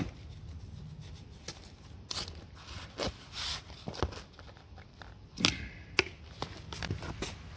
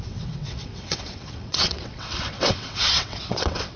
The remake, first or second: second